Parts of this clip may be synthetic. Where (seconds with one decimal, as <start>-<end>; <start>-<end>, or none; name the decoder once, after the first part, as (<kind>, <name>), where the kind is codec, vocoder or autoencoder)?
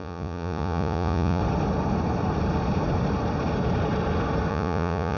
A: 0.0-1.4 (vocoder, Vocos); 4.5-5.2